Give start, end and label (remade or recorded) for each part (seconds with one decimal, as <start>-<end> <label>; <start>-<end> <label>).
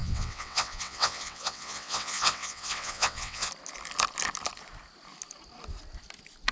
0.0-3.5 remade; 3.5-6.5 recorded